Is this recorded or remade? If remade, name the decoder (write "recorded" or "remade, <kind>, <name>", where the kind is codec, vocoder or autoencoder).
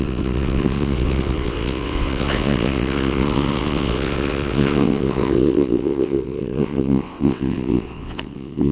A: remade, vocoder, WaveNeXt